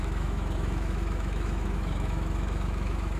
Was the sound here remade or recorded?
remade